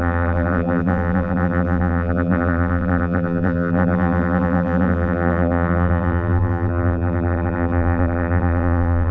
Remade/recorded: remade